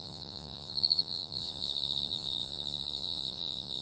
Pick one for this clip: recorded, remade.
remade